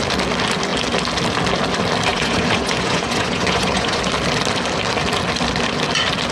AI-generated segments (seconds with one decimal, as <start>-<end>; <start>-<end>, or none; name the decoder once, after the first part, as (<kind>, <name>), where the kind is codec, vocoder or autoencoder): 2.1-4.0 (vocoder, Vocos)